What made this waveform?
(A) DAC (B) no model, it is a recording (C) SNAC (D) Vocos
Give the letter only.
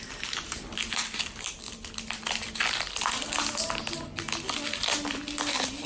B